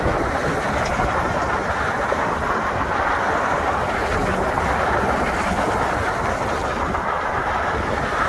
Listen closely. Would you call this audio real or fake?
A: real